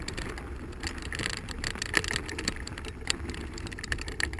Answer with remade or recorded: recorded